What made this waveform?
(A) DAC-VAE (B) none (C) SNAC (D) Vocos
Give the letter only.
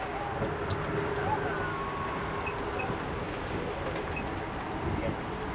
B